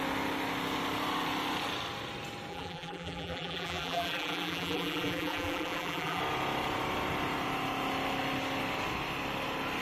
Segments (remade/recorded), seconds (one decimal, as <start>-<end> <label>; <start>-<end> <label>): 0.0-2.5 recorded; 2.5-6.2 remade; 6.2-9.8 recorded